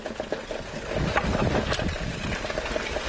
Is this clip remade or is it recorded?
recorded